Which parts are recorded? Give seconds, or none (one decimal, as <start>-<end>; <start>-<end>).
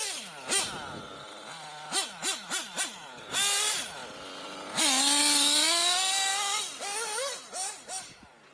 0.0-8.5